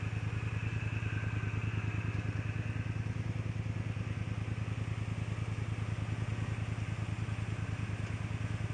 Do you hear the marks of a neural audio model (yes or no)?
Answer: no